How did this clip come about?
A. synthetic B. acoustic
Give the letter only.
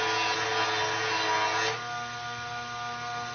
B